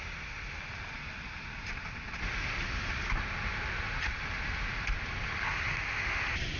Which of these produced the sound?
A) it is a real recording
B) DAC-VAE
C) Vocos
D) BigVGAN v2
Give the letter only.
A